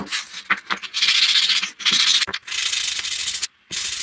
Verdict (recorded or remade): recorded